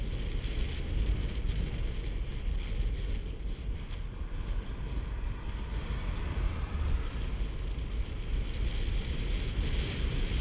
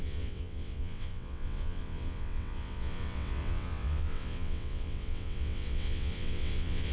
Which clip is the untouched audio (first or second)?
first